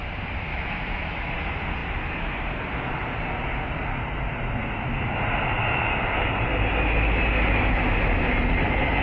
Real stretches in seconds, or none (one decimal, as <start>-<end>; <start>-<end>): 0.0-0.5; 1.3-9.0